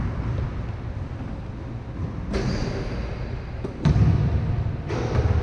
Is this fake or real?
real